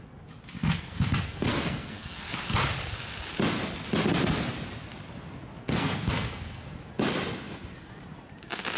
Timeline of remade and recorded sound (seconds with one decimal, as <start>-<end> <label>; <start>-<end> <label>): 0.0-0.6 recorded; 0.6-2.3 remade; 2.3-5.6 recorded; 5.6-6.8 remade; 6.8-8.8 recorded

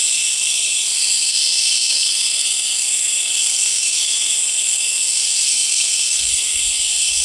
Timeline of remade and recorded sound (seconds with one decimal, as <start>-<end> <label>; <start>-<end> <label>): 0.0-7.2 remade